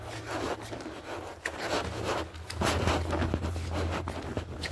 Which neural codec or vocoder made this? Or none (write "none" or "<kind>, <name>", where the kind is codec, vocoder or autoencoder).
none